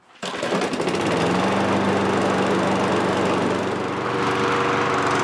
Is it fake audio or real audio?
real